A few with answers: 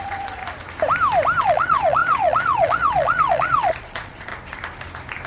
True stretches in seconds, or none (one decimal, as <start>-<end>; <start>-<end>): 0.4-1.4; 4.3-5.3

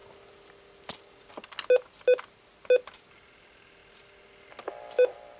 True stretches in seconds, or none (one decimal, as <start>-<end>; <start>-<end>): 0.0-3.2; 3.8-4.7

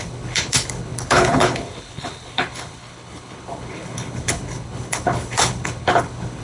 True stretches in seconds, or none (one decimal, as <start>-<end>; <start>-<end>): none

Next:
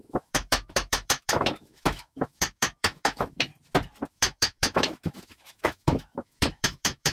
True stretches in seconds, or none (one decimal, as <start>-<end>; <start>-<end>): 3.5-4.1

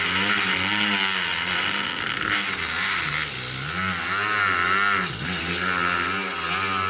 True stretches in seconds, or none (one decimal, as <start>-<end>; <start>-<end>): 0.0-6.9